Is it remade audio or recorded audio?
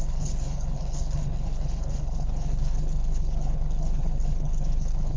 remade